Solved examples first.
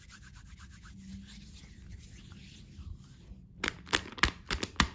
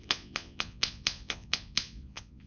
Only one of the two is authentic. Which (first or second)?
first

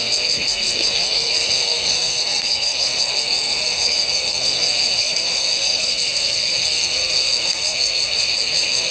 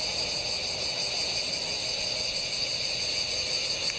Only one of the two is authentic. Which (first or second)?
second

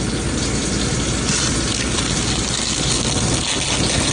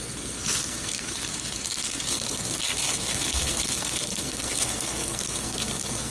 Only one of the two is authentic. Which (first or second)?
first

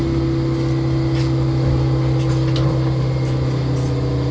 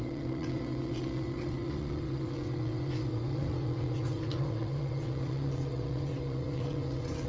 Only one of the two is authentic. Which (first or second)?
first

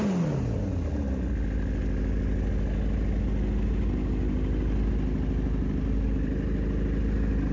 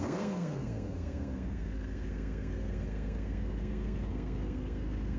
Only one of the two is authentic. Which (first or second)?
first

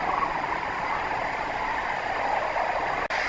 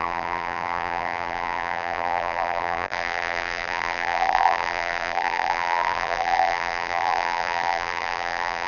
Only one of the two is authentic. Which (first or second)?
first